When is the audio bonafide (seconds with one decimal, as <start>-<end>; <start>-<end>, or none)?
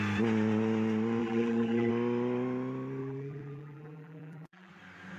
0.0-1.2; 1.9-3.0; 4.7-5.2